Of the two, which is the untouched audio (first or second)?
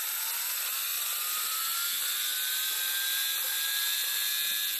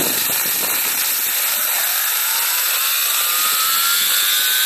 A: second